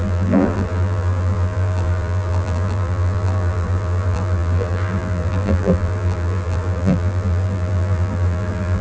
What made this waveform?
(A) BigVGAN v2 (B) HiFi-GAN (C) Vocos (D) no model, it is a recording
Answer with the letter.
A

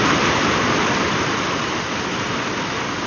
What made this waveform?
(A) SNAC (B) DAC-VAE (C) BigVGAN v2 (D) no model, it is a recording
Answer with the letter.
D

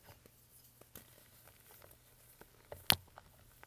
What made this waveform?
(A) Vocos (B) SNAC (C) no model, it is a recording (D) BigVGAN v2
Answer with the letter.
C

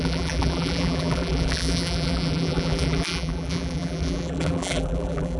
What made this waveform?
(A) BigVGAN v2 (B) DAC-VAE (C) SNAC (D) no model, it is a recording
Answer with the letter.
A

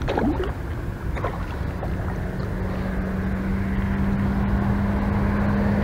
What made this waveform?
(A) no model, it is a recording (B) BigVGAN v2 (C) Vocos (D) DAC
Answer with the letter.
A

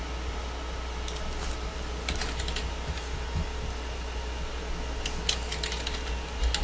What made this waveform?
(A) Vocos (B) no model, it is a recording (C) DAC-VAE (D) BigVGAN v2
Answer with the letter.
B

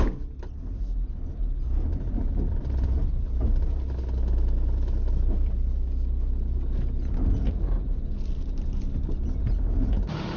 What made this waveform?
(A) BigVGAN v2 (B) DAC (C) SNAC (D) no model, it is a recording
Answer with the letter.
D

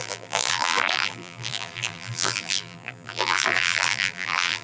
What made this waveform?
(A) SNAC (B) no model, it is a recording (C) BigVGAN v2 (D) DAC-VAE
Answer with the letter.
C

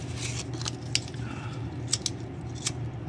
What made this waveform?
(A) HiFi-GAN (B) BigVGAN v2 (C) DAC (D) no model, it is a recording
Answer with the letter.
D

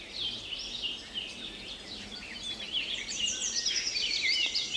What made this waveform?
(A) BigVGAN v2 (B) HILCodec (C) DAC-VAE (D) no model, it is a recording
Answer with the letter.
A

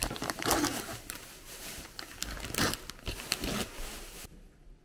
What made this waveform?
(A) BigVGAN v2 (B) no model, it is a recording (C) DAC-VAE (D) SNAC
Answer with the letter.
B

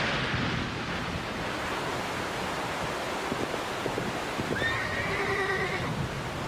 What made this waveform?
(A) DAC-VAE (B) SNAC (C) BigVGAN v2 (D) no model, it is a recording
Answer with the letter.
D